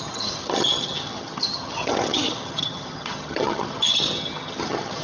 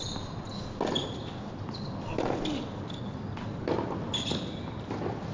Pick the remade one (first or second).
first